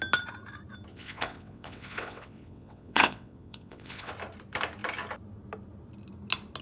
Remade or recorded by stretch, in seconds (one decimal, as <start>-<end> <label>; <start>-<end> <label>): 0.0-0.9 recorded; 0.9-4.1 remade; 4.1-6.6 recorded